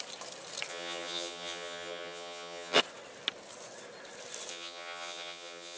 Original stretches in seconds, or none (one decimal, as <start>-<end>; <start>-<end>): 0.0-0.7; 2.8-4.5